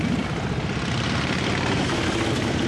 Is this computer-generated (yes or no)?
no